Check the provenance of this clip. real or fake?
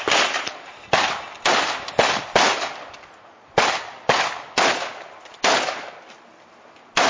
real